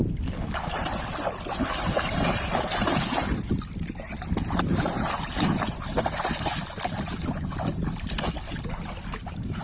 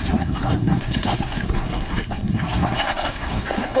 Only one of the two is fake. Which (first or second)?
second